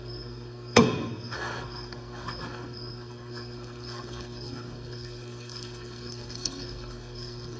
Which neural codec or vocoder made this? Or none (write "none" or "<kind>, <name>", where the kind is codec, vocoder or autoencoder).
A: codec, SNAC